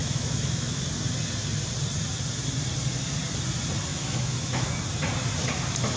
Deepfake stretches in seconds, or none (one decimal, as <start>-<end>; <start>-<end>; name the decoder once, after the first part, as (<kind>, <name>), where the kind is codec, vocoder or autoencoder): 0.0-0.8 (autoencoder, DAC-VAE); 3.9-4.7